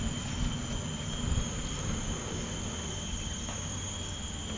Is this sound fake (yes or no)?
no